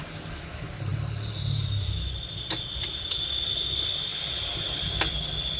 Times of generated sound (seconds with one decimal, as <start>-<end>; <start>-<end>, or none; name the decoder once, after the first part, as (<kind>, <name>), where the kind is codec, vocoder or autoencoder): 0.9-2.2 (vocoder, BigVGAN v2); 4.1-5.0